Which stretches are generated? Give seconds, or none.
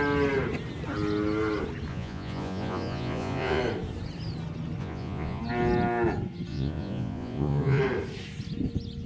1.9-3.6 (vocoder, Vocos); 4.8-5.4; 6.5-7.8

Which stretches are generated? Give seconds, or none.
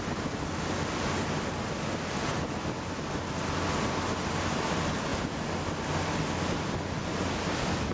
none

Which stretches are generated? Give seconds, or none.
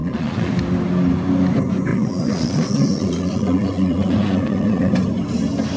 0.0-0.5 (vocoder, Vocos); 1.9-4.9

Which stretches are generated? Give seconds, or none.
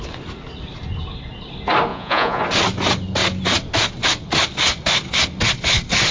1.9-2.4 (vocoder, Vocos)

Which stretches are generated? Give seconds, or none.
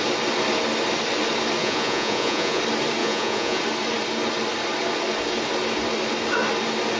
1.6-2.6 (vocoder, Vocos); 3.0-3.6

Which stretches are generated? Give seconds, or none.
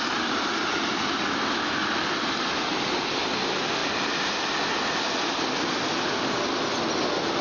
none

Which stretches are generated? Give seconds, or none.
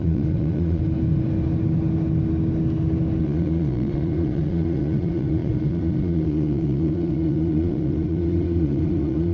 0.0-0.8 (vocoder, Vocos); 3.2-9.3